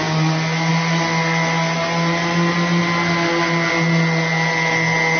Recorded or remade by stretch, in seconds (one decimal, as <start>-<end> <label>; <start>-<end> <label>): 0.0-5.2 recorded